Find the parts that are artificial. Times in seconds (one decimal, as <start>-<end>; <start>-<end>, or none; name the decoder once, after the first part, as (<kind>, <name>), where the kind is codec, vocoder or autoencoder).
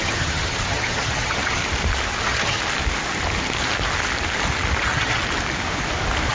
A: 0.0-1.6 (vocoder, HiFi-GAN); 2.2-2.6; 4.8-5.2